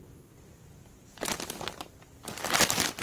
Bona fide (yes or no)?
yes